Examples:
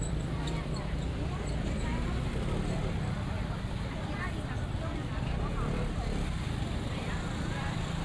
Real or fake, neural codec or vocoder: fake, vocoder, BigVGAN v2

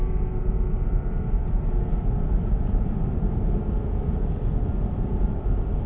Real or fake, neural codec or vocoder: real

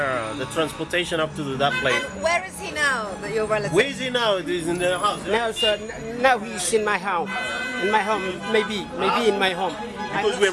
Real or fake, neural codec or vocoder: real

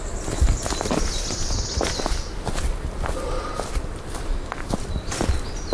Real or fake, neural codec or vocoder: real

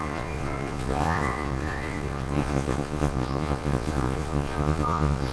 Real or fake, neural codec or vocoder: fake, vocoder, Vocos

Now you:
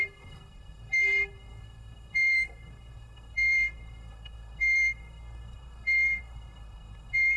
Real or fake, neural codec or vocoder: fake, codec, SNAC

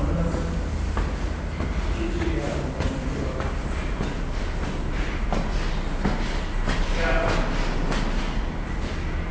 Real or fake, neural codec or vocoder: real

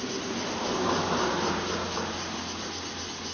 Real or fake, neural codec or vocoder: real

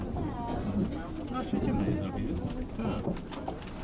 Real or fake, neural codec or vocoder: real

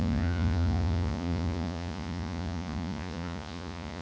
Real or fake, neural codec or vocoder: fake, vocoder, Vocos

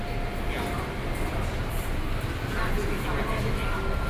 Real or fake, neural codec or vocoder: real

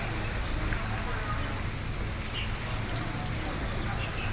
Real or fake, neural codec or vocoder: real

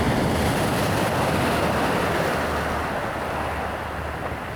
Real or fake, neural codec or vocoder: real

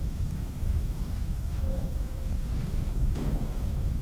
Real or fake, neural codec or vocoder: fake, codec, DAC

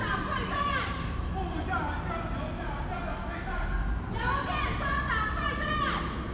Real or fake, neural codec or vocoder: real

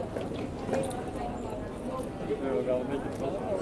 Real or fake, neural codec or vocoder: real